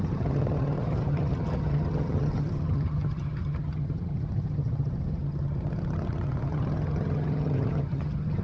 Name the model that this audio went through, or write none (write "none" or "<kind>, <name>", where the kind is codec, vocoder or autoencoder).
vocoder, HiFi-GAN